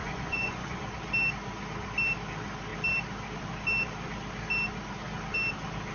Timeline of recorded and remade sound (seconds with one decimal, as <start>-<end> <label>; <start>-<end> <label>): 0.0-0.8 remade; 0.8-5.9 recorded